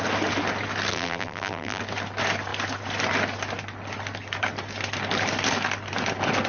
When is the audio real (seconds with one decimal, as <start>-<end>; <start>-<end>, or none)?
0.0-0.9; 1.8-6.5